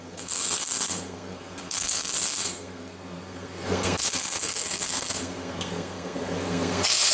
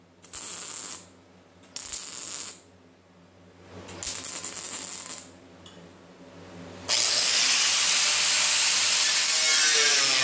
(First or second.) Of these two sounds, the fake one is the first